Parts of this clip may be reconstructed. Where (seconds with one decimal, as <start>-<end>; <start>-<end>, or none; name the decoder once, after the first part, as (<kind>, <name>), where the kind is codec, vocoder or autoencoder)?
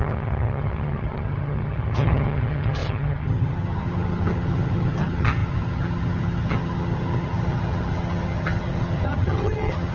0.0-9.9 (vocoder, HiFi-GAN)